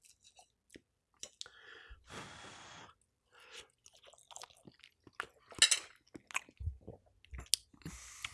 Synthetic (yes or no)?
no